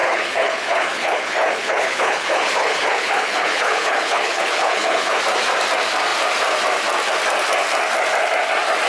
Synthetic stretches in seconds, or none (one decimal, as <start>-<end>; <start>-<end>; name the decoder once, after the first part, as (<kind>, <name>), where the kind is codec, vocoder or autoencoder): 0.0-5.2 (codec, HILCodec)